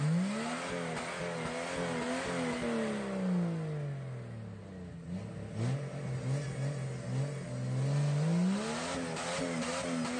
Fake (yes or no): no